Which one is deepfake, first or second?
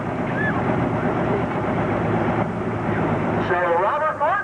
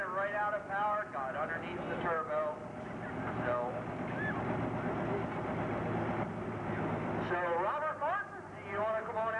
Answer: first